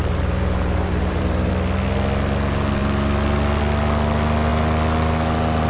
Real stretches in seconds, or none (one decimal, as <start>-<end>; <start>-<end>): 1.5-5.7